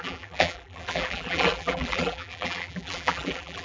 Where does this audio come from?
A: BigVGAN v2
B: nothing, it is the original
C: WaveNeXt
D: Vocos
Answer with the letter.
A